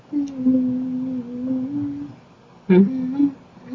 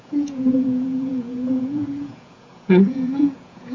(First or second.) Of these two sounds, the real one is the first